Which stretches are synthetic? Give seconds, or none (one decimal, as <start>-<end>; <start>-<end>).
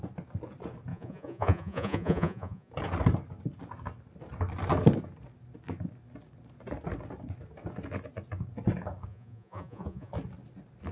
0.9-2.7; 9.1-10.1